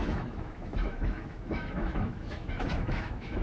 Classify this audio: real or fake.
fake